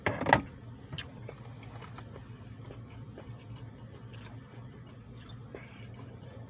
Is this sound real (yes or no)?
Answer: yes